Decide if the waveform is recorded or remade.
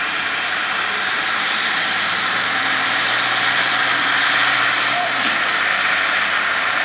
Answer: recorded